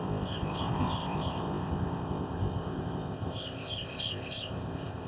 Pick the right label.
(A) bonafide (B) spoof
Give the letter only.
B